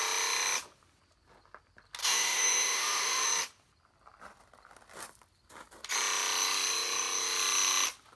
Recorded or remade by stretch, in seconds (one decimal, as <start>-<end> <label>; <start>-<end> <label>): 0.0-2.0 recorded; 2.0-3.3 remade; 3.3-8.2 recorded